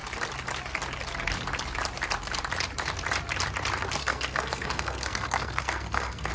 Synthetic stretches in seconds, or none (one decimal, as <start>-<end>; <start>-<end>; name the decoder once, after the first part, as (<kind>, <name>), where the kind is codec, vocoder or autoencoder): 4.0-6.3 (codec, SNAC)